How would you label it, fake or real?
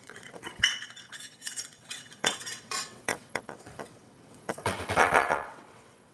fake